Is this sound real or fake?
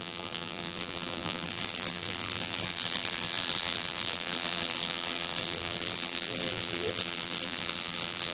fake